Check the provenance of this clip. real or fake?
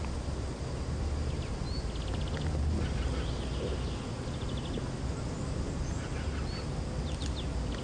real